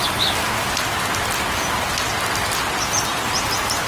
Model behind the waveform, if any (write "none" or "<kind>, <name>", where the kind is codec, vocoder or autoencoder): none